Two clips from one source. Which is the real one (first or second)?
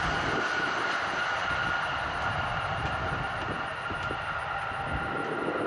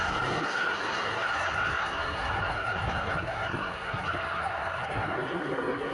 first